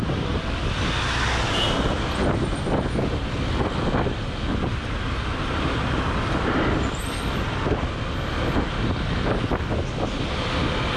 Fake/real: real